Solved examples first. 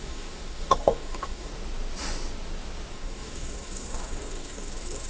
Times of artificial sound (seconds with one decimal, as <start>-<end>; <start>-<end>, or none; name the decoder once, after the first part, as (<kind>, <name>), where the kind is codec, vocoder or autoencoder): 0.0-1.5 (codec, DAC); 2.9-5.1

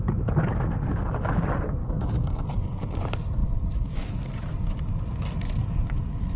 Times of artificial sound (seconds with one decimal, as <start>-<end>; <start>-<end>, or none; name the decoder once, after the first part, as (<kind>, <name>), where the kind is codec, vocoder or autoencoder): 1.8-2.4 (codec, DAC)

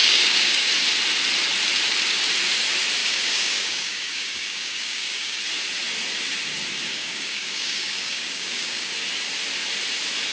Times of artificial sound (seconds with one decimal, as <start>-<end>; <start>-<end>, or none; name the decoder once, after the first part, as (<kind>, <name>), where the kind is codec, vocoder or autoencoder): 0.0-0.7 (codec, DAC); 3.0-5.4; 6.9-8.9

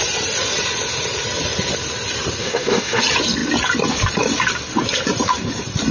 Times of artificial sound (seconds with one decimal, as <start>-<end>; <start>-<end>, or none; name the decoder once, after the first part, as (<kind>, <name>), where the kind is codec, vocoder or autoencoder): 2.4-3.0 (codec, DAC)